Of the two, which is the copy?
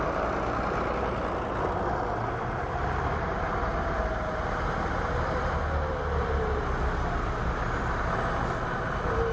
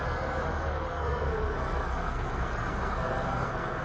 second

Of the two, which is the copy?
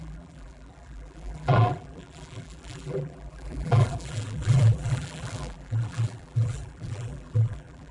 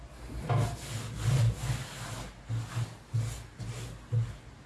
first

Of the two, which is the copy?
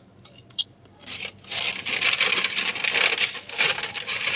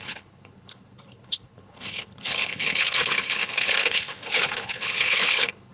second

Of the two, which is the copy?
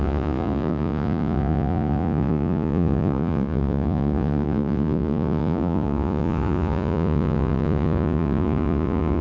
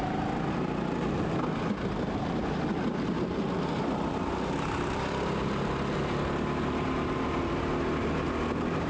first